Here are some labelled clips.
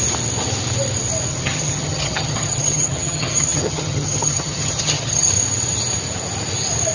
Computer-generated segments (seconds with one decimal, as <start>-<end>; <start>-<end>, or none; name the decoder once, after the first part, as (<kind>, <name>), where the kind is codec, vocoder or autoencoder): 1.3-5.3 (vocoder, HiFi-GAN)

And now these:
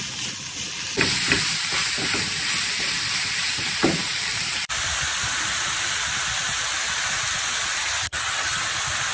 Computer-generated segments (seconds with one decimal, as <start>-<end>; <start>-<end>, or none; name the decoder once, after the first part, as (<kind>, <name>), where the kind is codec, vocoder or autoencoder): 7.8-8.6 (vocoder, HiFi-GAN)

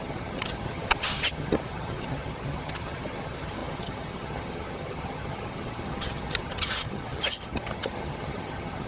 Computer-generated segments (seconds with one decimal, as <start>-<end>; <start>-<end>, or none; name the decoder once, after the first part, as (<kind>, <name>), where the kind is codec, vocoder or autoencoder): 0.0-8.9 (vocoder, HiFi-GAN)

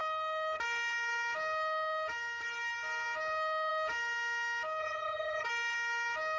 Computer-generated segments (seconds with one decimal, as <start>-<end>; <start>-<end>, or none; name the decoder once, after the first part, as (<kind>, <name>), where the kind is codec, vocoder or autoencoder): 4.8-5.5 (vocoder, HiFi-GAN)

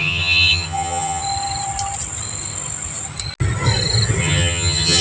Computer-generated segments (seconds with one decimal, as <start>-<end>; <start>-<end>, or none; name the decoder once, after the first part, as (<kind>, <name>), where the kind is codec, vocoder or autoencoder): 0.0-1.2 (vocoder, HiFi-GAN); 4.2-5.0

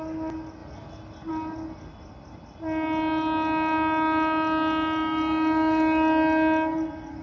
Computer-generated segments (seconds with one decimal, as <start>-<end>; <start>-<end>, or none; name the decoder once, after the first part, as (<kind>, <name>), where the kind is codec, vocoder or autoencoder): none

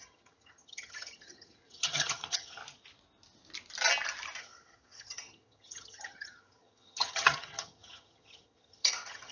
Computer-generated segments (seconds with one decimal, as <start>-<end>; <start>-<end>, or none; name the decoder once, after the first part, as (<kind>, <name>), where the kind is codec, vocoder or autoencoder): 0.0-2.6 (vocoder, HiFi-GAN); 4.4-9.3

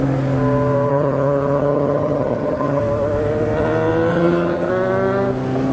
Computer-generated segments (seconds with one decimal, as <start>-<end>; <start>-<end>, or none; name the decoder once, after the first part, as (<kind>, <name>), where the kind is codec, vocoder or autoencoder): 0.9-2.8 (vocoder, HiFi-GAN); 4.1-4.7